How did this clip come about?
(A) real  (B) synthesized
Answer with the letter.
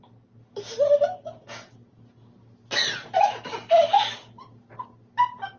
A